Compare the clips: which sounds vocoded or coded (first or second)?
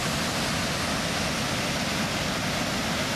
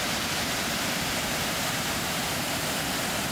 second